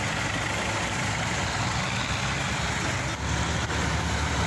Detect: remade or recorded recorded